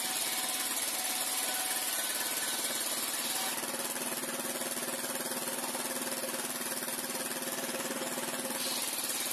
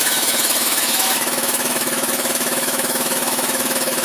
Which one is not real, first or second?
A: second